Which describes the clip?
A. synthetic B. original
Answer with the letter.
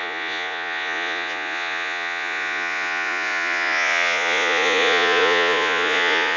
A